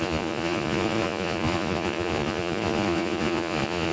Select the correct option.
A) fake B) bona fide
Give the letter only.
A